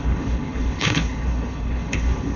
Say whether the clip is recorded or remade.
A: remade